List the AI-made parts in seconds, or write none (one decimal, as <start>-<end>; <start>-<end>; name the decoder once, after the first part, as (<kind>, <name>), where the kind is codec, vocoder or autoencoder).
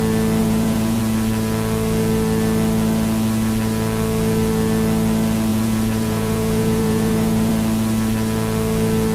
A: 0.4-1.0 (vocoder, Vocos); 5.5-7.5